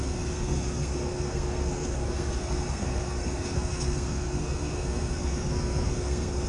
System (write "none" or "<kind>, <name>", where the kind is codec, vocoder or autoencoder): codec, SNAC